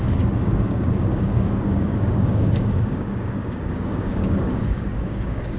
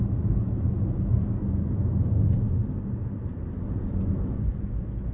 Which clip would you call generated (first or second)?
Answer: first